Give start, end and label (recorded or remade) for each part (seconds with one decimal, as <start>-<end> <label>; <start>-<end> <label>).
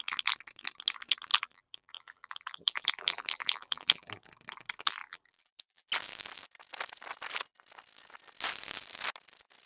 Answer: 0.0-1.3 recorded; 1.3-4.1 remade; 4.1-5.0 recorded; 5.0-5.9 remade; 5.9-9.7 recorded